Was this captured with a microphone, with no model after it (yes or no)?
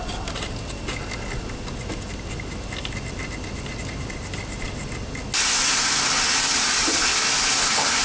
yes